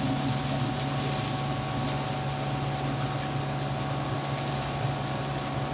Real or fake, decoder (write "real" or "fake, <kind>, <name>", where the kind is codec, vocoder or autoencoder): real